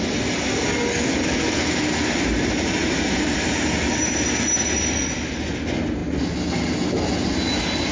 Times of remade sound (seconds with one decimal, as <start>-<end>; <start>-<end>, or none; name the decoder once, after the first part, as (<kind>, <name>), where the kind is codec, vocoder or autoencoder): 2.8-4.5 (vocoder, BigVGAN v2)